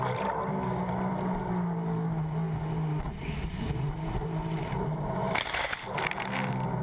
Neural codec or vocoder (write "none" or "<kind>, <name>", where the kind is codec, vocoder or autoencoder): none